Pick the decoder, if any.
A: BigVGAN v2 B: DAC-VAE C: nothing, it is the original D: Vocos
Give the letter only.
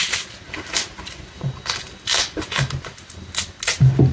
C